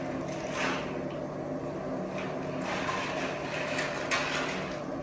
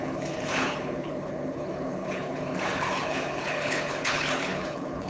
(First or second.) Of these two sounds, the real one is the first